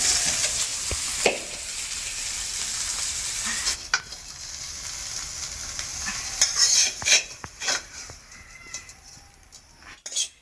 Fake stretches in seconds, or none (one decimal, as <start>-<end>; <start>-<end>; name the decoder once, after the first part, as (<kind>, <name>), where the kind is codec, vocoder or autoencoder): 5.9-9.3 (vocoder, BigVGAN v2)